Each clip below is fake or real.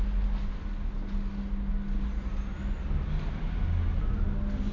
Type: real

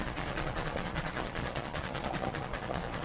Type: fake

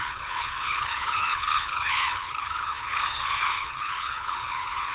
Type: fake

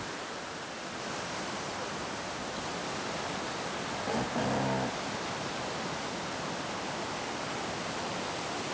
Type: real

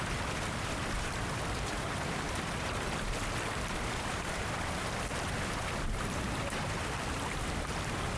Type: fake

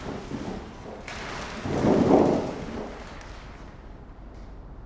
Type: real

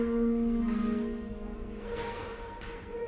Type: fake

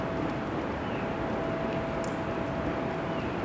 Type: real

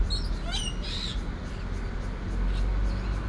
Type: real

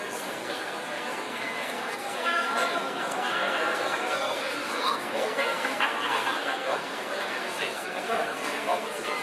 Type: fake